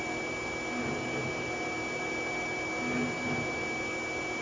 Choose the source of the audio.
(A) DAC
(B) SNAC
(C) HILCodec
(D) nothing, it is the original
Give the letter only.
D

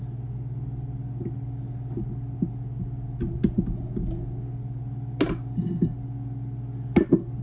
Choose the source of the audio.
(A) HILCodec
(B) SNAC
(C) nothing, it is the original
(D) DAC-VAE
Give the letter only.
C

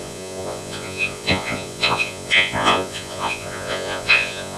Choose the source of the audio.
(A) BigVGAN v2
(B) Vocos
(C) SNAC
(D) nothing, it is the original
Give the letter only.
B